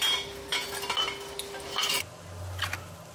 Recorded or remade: recorded